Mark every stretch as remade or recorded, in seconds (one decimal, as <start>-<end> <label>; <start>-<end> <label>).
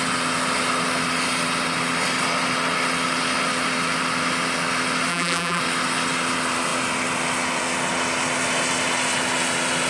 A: 0.0-5.1 recorded; 5.1-5.6 remade; 5.6-9.9 recorded